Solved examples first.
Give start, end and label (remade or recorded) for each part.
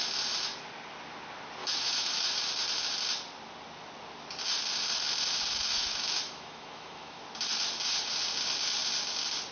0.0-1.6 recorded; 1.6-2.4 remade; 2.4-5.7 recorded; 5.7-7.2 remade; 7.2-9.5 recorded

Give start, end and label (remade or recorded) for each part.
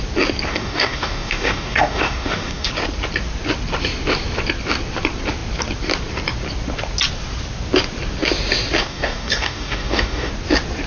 0.0-0.5 recorded; 0.5-2.7 remade; 2.7-8.8 recorded; 8.8-10.3 remade; 10.3-10.9 recorded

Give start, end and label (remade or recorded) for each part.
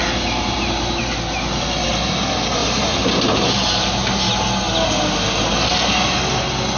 0.0-1.0 remade; 1.0-2.6 recorded; 2.6-4.3 remade; 4.3-6.8 recorded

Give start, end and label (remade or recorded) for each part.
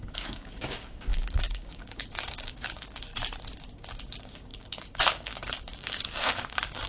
0.0-3.1 remade; 3.1-3.7 recorded; 3.7-6.9 remade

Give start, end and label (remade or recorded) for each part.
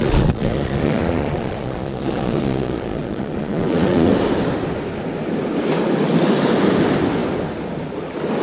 0.0-4.1 remade; 4.1-8.4 recorded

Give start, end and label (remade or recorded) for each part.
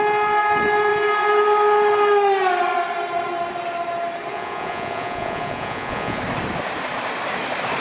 0.0-4.3 recorded; 4.3-6.2 remade; 6.2-7.8 recorded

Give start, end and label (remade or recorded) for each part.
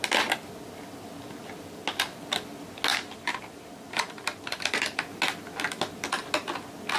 0.0-2.9 recorded; 2.9-5.0 remade; 5.0-7.0 recorded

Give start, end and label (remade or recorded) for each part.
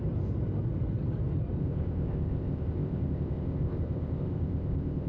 0.0-1.6 recorded; 1.6-5.1 remade